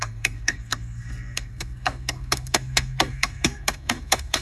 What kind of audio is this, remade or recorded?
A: remade